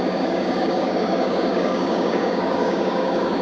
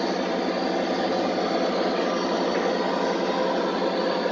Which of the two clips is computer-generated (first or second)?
first